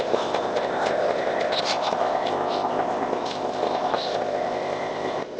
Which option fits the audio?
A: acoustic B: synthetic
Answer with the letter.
B